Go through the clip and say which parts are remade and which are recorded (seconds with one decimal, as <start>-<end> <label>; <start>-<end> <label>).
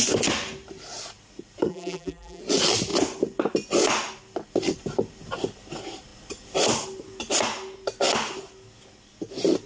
0.0-1.7 recorded; 1.7-2.4 remade; 2.4-9.7 recorded